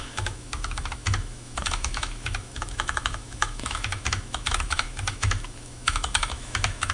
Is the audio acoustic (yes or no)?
no